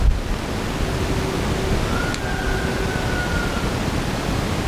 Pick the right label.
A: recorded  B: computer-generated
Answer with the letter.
A